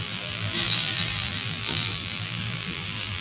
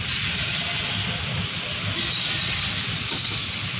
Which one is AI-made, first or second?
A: first